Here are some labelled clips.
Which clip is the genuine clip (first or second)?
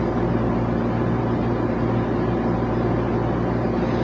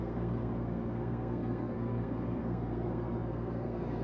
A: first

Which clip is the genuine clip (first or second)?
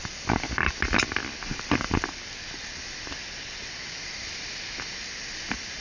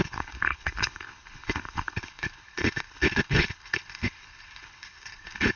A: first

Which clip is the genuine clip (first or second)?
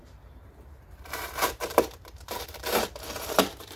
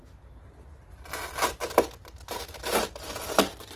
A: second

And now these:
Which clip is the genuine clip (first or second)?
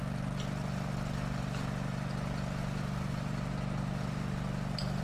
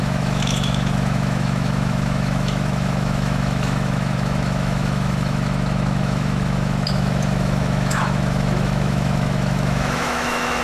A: first